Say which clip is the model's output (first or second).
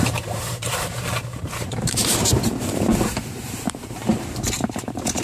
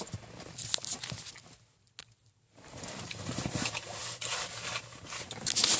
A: first